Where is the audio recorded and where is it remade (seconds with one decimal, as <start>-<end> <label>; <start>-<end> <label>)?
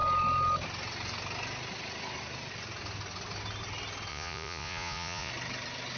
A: 0.0-4.1 recorded; 4.1-5.3 remade; 5.3-6.0 recorded